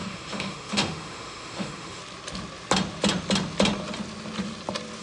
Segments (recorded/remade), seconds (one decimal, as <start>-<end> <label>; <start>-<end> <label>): 0.0-2.0 remade; 2.0-5.0 recorded